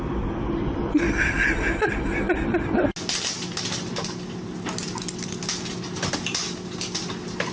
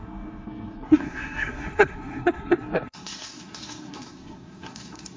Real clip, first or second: first